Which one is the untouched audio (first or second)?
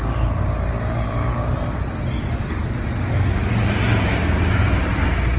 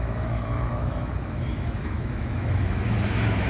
first